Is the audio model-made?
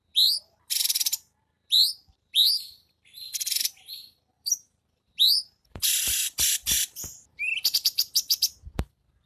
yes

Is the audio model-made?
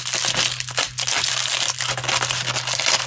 no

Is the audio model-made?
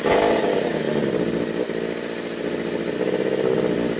no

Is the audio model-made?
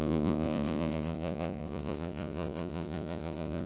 yes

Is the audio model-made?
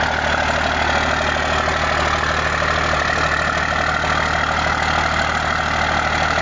no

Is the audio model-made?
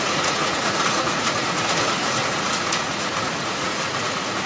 yes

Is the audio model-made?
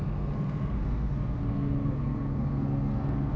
yes